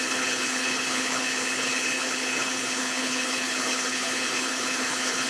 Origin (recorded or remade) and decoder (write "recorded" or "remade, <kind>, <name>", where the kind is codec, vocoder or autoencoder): remade, codec, HILCodec